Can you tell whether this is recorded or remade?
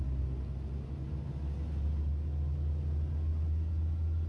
recorded